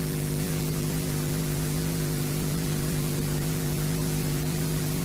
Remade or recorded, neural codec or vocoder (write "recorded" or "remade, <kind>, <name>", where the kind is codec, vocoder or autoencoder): remade, vocoder, BigVGAN v2